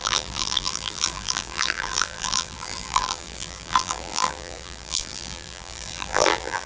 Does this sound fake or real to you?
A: fake